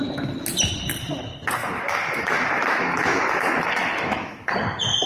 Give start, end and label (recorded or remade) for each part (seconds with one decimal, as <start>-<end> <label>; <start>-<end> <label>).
0.0-1.6 recorded; 1.6-4.5 remade; 4.5-5.1 recorded